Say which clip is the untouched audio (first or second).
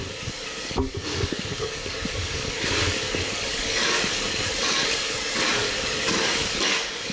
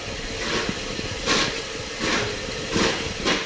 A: second